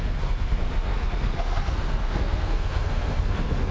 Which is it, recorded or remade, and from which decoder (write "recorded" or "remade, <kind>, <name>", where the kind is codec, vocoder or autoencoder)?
remade, codec, SNAC